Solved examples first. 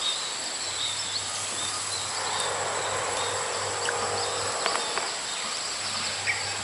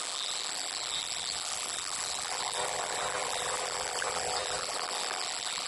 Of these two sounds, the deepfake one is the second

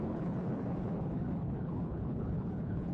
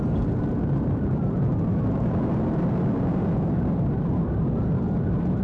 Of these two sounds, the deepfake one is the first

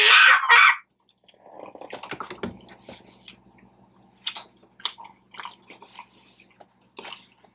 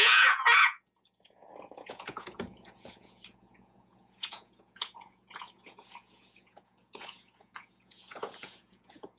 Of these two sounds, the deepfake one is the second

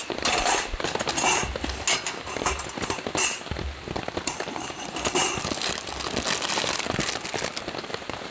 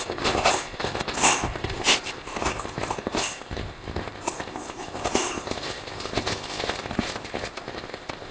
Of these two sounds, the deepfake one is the second